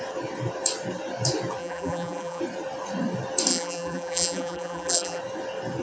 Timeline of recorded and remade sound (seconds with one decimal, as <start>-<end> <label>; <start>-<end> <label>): 0.0-1.6 recorded; 1.6-2.4 remade; 2.4-3.5 recorded; 3.5-5.2 remade; 5.2-5.8 recorded